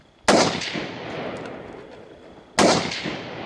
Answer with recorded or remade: recorded